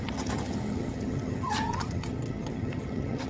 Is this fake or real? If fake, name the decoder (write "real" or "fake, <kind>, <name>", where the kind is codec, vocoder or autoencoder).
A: fake, vocoder, HiFi-GAN